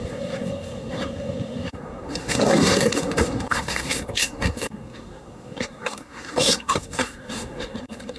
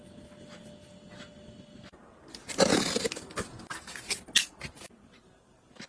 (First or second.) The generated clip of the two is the first